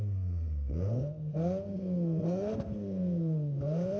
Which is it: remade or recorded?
remade